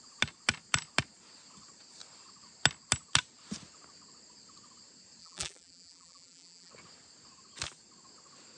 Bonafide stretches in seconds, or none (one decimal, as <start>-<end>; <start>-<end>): 0.0-5.2; 6.7-8.6